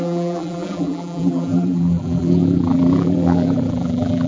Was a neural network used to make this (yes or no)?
yes